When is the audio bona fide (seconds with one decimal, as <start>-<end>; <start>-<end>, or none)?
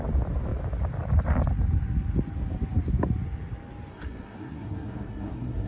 0.0-3.9